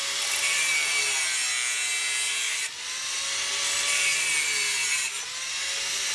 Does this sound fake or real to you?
real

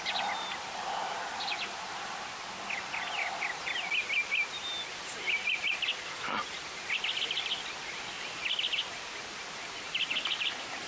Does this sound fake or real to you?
real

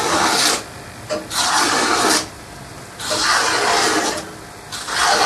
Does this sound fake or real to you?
real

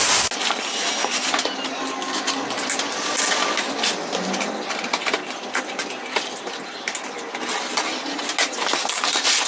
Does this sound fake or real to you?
real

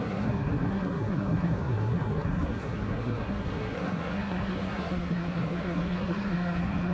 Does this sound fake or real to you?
fake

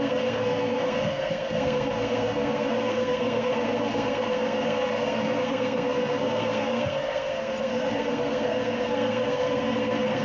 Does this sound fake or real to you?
fake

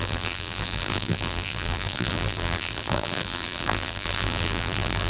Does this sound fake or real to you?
fake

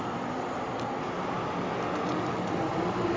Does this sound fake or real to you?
real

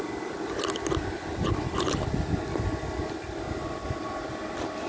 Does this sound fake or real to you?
real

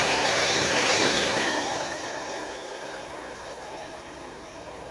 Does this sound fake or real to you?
fake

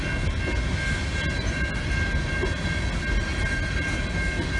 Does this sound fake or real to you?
real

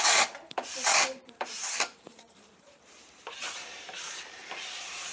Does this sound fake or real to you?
fake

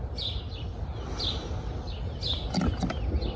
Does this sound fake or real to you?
real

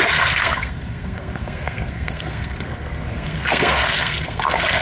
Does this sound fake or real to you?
fake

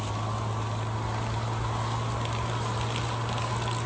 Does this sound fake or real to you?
real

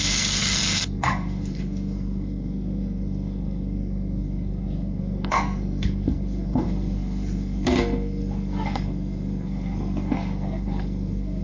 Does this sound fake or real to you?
fake